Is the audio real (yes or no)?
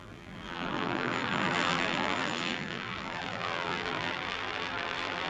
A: no